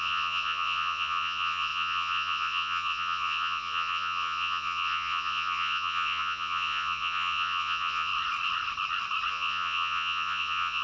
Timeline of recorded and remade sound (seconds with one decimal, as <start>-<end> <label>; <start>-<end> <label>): 0.0-8.1 remade; 8.1-9.3 recorded; 9.3-10.8 remade